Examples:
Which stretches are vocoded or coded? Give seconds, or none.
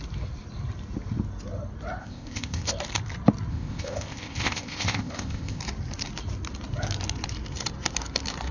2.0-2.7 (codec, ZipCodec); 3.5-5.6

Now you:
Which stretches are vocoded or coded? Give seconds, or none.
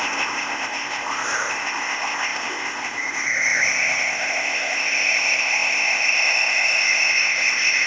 0.0-7.9 (codec, ZipCodec)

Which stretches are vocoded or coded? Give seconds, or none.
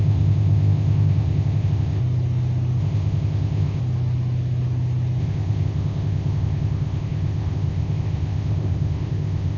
0.0-2.0 (codec, ZipCodec); 2.8-3.8; 5.2-9.6